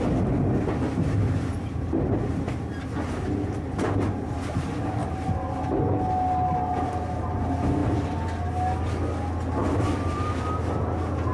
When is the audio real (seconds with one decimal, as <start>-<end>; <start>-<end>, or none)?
0.0-9.6; 10.6-11.3